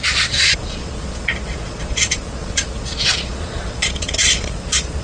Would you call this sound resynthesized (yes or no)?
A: yes